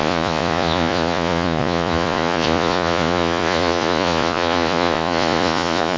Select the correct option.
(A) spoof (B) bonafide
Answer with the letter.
A